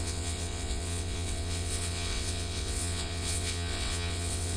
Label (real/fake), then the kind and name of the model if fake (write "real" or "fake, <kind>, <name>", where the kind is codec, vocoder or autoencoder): fake, vocoder, WaveNeXt